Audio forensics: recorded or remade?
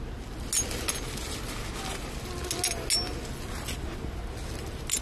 recorded